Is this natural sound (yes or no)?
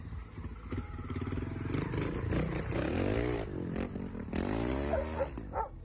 yes